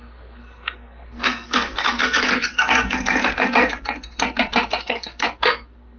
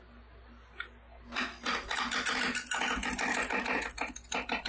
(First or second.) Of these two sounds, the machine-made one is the first